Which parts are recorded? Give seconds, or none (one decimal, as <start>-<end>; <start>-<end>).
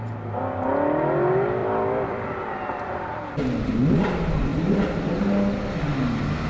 0.0-1.6; 2.9-4.5; 5.2-6.5